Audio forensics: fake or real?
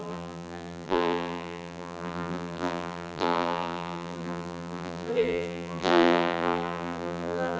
fake